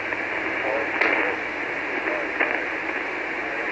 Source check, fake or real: real